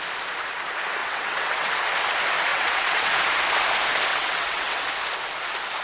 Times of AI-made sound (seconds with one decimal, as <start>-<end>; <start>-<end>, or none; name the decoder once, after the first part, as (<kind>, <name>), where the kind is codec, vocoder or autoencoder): 1.0-1.7 (vocoder, WaveNeXt); 2.5-3.1; 4.1-4.8